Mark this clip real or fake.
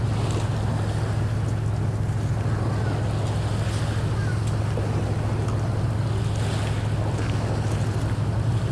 real